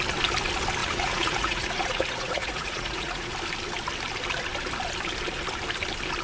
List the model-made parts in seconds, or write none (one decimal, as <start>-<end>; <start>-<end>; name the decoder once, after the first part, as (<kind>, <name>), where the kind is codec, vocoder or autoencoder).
0.8-3.3 (vocoder, Vocos)